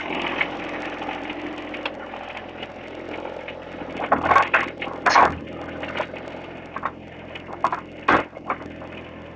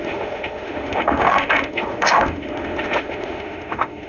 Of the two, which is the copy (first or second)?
second